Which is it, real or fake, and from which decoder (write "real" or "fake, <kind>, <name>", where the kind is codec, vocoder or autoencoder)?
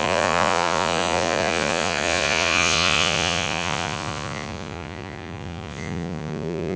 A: fake, vocoder, Vocos